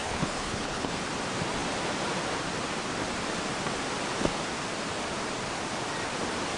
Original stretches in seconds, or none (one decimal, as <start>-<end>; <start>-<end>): 1.0-6.6